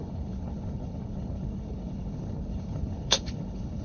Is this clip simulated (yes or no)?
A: yes